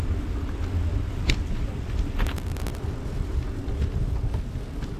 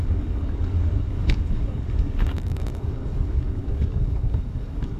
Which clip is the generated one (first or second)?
second